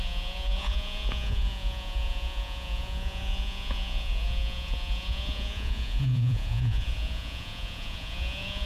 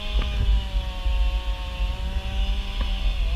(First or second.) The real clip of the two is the second